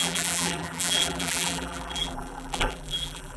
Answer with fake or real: fake